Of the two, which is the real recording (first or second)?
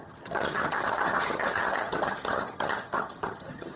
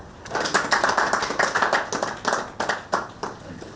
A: second